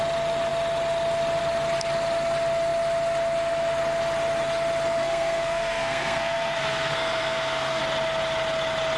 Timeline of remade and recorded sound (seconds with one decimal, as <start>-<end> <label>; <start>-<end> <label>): 0.0-5.0 recorded; 5.0-7.8 remade; 7.8-9.0 recorded